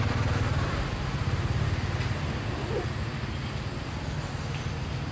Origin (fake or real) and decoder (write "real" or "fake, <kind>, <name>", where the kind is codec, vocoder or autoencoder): real